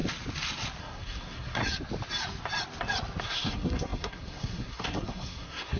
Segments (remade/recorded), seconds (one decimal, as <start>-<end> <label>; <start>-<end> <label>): 0.0-0.8 recorded; 0.8-1.6 remade; 1.6-3.2 recorded; 3.2-5.8 remade

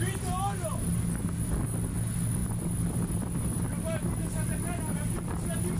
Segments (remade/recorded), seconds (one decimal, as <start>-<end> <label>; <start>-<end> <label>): 0.0-5.8 recorded